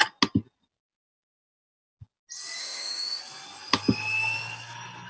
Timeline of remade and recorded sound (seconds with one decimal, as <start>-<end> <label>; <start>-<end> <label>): 0.0-2.6 recorded; 2.6-3.2 remade; 3.2-5.1 recorded